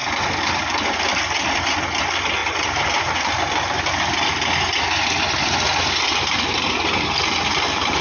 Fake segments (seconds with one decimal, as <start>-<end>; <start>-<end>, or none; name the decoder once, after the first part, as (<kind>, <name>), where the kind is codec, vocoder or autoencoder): 0.0-1.8 (vocoder, BigVGAN v2); 2.4-4.3